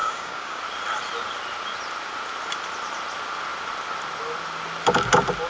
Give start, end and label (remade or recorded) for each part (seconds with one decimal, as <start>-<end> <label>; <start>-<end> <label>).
0.0-0.6 remade; 0.6-5.5 recorded